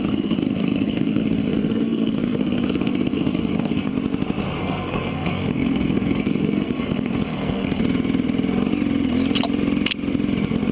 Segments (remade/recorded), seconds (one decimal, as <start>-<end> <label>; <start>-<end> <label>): 0.0-3.9 remade; 3.9-4.6 recorded; 4.6-7.8 remade; 7.8-10.7 recorded